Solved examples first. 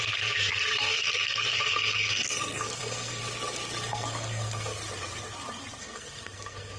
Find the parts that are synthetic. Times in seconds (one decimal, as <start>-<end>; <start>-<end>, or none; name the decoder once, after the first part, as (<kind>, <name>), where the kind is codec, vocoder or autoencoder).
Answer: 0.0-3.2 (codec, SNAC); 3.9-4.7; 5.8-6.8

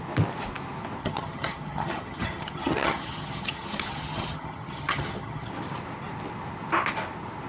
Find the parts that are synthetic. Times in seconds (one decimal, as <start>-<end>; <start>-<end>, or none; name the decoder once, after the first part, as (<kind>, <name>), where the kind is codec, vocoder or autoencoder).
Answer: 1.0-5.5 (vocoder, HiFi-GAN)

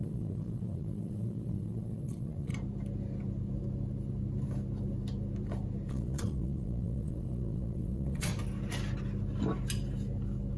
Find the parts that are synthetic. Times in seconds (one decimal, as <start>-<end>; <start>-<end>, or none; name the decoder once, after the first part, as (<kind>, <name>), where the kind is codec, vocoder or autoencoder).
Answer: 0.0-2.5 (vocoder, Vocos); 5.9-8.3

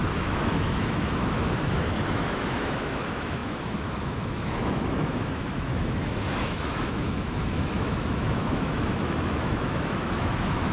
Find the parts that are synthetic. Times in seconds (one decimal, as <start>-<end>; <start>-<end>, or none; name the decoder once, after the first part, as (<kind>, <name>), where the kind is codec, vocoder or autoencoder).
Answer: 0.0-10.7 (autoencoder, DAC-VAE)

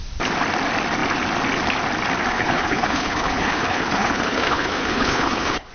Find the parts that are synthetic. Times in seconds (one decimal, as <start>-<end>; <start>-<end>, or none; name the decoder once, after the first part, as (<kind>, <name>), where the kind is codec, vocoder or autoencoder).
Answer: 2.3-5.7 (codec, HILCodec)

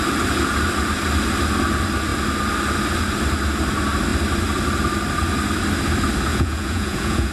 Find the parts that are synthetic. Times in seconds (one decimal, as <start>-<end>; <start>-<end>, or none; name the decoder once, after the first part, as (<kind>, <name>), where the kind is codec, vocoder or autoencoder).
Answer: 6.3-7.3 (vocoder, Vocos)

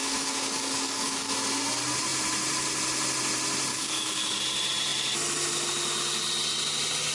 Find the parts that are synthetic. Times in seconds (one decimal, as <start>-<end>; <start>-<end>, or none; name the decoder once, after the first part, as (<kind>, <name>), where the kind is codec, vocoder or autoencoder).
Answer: 0.0-1.3 (codec, DAC); 3.7-4.4